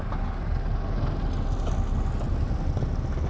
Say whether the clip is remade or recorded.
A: recorded